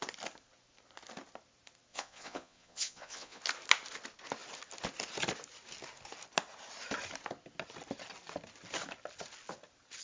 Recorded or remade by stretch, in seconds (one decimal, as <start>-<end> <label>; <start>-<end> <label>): 0.0-1.9 recorded; 1.9-3.4 remade; 3.4-10.0 recorded